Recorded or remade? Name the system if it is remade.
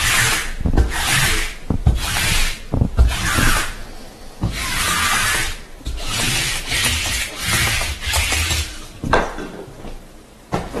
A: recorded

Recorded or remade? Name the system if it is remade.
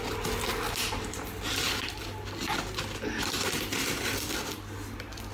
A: recorded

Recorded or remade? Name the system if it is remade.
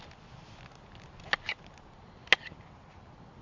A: recorded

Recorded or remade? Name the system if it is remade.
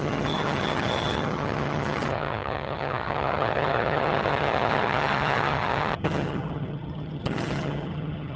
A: remade, vocoder, HiFi-GAN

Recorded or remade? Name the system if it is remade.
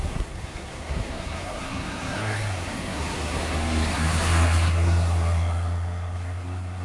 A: remade, codec, SNAC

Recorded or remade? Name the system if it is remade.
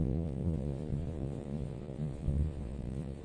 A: remade, vocoder, Vocos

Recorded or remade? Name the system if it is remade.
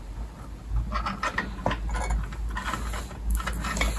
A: recorded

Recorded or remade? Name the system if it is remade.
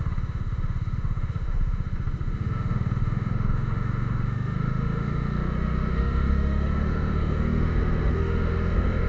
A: remade, autoencoder, DAC-VAE